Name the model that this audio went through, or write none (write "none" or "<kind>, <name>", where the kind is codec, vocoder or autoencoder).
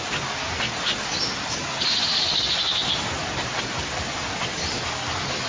none